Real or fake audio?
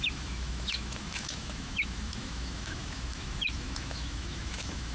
fake